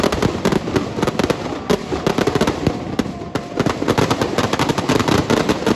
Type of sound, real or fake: fake